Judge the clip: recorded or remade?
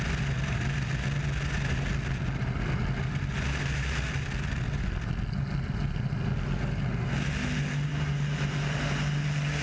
recorded